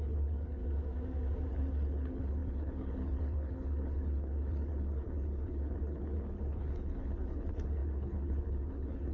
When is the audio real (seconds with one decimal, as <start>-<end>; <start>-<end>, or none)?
0.6-1.5